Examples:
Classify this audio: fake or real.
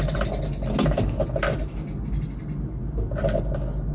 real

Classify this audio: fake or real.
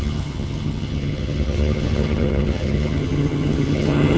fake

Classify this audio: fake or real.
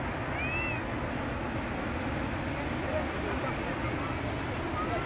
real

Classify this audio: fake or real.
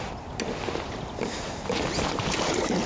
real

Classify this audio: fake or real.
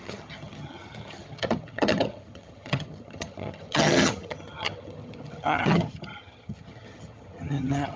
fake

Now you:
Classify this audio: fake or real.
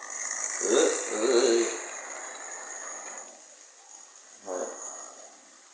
real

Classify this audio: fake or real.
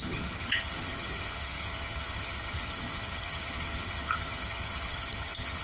fake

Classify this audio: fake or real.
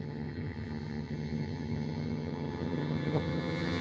fake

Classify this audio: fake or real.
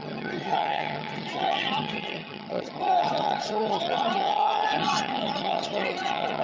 fake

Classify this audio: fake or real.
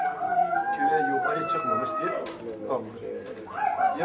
real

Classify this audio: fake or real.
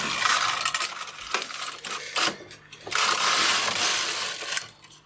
real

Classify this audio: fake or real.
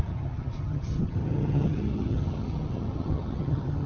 fake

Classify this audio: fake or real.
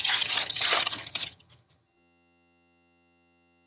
fake